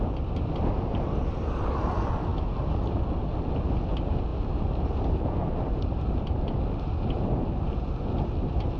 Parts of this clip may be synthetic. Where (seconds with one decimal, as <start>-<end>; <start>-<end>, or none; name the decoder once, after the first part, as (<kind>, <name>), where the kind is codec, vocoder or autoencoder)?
none